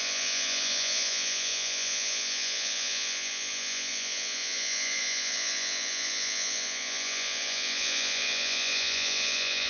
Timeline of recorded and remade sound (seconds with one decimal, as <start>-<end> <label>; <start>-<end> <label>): 0.0-9.7 remade